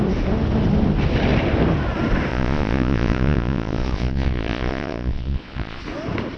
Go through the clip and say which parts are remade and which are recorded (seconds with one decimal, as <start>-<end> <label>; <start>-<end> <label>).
0.0-2.3 recorded; 2.3-5.8 remade; 5.8-6.4 recorded